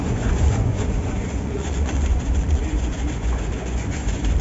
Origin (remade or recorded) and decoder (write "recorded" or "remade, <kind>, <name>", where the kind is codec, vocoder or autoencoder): remade, vocoder, Vocos